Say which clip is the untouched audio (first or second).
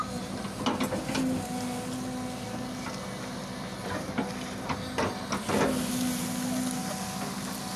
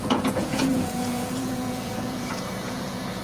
first